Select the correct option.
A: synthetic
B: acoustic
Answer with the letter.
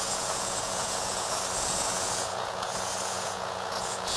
A